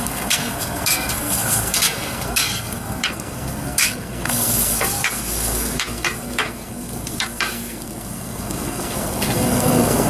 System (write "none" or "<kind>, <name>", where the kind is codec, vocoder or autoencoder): codec, SNAC